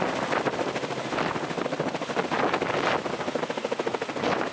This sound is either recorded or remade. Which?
recorded